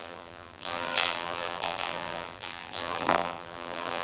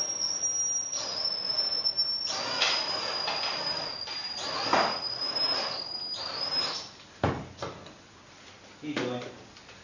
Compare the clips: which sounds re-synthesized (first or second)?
first